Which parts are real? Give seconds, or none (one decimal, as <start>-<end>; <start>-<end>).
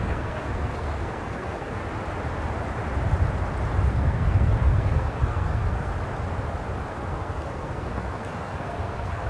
1.8-3.9; 5.9-6.9